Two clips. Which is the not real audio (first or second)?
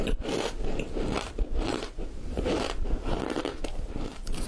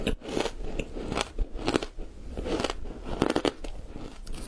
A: first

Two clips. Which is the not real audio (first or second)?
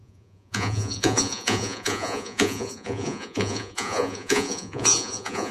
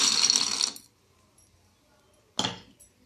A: first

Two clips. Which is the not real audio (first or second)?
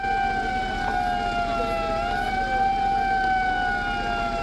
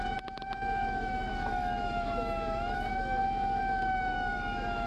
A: second